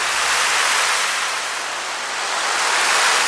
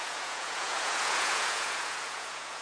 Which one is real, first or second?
first